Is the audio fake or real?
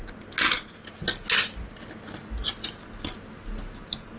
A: real